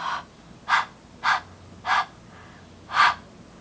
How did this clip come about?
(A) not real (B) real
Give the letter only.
B